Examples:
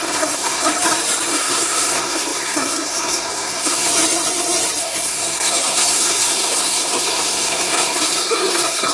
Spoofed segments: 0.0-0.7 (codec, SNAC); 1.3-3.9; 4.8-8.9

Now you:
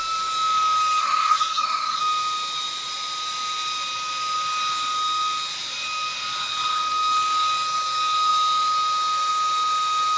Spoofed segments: 1.0-2.0 (codec, SNAC)

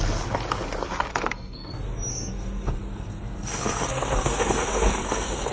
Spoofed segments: 1.1-1.7 (codec, SNAC); 2.1-5.5

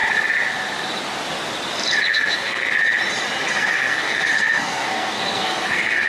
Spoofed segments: 2.1-2.6 (codec, SNAC); 3.5-6.1

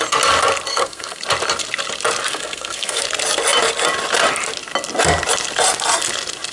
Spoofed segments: 0.7-1.2 (codec, SNAC); 2.3-3.0

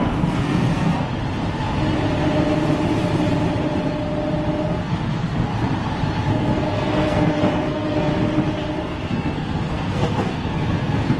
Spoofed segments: 0.0-1.1 (codec, SNAC); 4.8-5.5; 6.3-8.1; 8.8-11.2

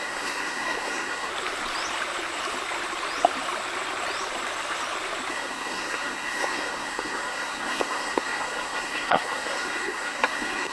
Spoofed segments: 0.0-1.3 (codec, SNAC); 5.3-10.7